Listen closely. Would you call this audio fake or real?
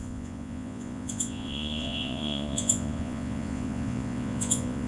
fake